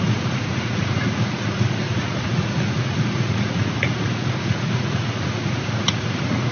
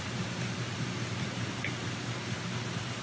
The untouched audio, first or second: second